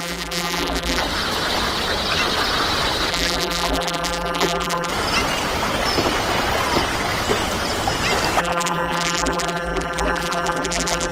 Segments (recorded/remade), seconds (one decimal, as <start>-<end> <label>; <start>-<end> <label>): 0.0-1.0 remade; 1.0-3.1 recorded; 3.1-4.9 remade; 4.9-8.4 recorded; 8.4-11.1 remade